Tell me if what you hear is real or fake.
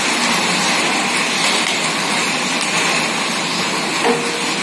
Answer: real